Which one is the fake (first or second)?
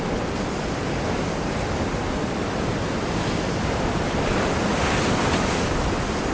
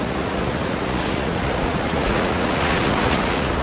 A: second